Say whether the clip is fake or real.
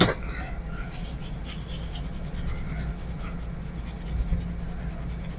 real